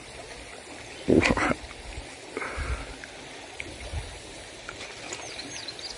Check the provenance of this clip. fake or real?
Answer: real